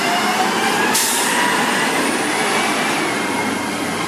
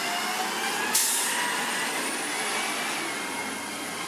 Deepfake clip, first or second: first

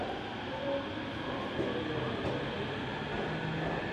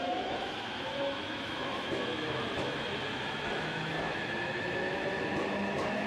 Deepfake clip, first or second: second